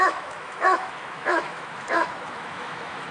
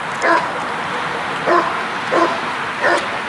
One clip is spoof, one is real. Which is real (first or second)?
second